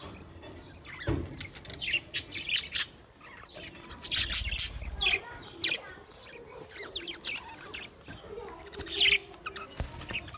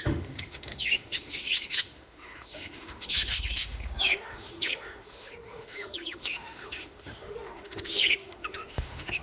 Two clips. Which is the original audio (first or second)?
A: first